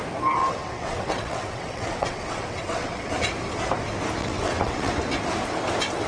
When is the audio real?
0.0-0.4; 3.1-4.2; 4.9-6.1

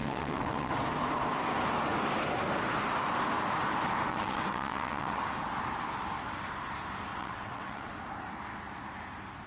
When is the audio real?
0.7-4.1; 5.2-7.1; 7.9-9.5

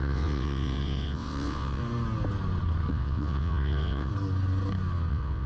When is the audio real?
1.8-2.9; 4.1-5.1